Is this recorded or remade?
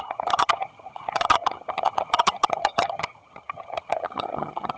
remade